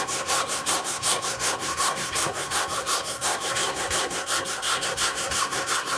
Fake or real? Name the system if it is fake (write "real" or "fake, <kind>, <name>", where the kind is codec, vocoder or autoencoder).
fake, codec, SNAC